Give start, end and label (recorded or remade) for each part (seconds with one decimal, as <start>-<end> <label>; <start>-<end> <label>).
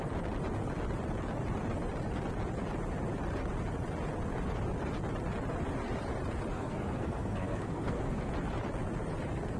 0.0-6.5 recorded; 6.5-8.3 remade; 8.3-9.6 recorded